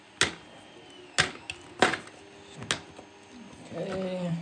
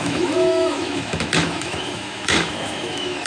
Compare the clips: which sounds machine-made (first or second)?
second